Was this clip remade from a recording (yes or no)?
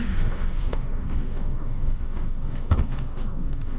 yes